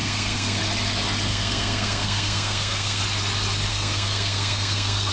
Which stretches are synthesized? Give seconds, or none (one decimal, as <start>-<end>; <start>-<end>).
0.0-0.6; 1.3-3.0; 3.7-5.1